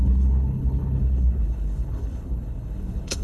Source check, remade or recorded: remade